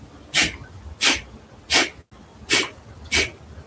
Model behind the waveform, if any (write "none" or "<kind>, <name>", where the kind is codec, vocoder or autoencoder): none